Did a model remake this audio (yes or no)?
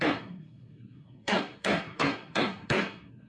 yes